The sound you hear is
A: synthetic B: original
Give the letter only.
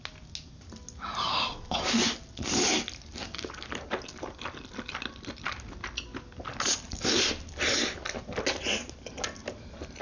B